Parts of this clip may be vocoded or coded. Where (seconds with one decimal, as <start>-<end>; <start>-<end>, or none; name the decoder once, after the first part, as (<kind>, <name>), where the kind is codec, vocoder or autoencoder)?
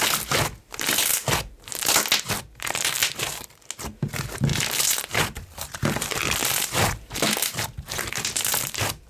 0.0-1.1 (vocoder, BigVGAN v2); 2.2-3.0; 4.0-9.1